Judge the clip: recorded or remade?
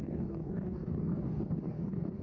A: remade